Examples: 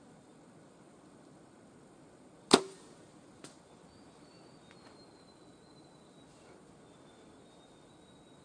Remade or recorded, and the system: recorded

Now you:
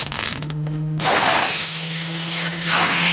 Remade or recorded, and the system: remade, autoencoder, DAC-VAE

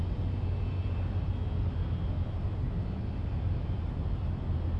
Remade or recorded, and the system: recorded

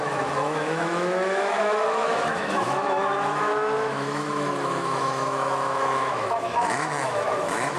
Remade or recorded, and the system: remade, autoencoder, DAC-VAE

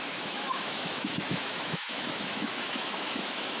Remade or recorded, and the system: remade, autoencoder, DAC-VAE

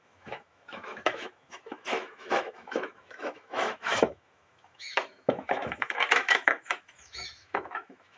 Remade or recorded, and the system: remade, autoencoder, DAC-VAE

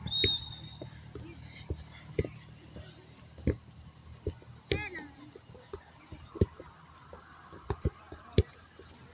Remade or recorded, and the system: recorded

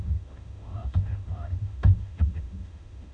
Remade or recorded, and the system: remade, autoencoder, DAC-VAE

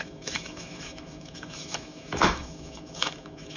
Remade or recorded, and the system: remade, autoencoder, DAC-VAE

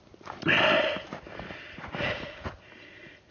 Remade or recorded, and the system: recorded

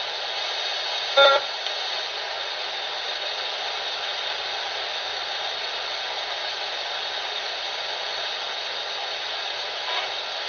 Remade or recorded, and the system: recorded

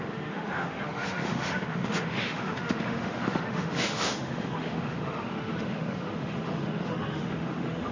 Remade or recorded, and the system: remade, autoencoder, DAC-VAE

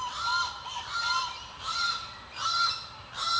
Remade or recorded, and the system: recorded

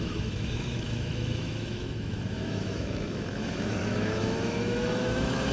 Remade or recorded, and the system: remade, autoencoder, DAC-VAE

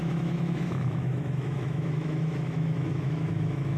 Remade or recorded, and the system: remade, autoencoder, DAC-VAE